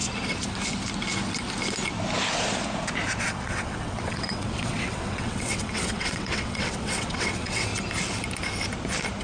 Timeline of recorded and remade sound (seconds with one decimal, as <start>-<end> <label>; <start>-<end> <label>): 0.0-3.2 recorded; 3.2-7.7 remade; 7.7-9.2 recorded